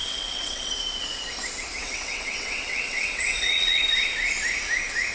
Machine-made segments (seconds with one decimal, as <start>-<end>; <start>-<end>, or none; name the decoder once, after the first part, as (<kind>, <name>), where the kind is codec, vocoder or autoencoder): 0.0-0.7 (vocoder, WaveNeXt); 1.8-3.8